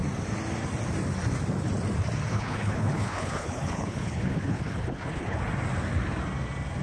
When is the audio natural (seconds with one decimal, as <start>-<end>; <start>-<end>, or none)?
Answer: 0.0-2.3; 5.4-6.8